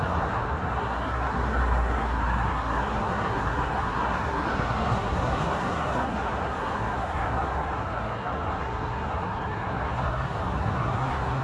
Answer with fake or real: fake